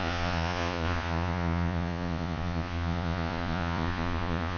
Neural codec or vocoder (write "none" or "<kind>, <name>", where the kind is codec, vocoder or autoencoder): vocoder, Vocos